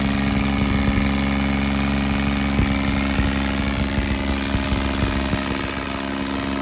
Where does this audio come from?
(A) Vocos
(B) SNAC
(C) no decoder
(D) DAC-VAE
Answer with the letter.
C